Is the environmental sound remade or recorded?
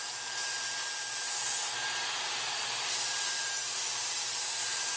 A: remade